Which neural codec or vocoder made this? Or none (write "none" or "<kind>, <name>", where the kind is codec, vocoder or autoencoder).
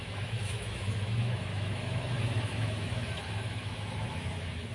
autoencoder, DAC-VAE